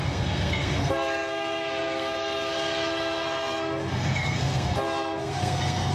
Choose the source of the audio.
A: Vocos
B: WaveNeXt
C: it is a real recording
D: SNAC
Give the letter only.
D